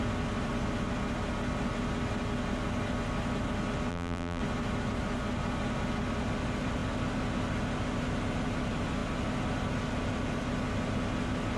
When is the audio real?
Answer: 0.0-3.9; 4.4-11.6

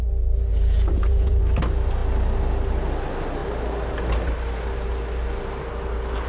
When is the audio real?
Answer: 0.0-0.5; 1.4-6.3